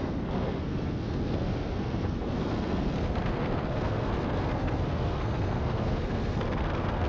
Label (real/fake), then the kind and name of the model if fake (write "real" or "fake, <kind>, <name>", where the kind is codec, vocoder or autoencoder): fake, codec, SNAC